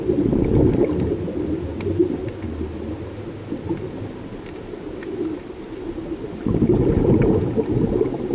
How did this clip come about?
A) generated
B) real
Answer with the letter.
B